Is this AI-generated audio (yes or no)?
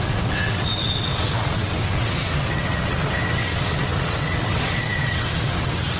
yes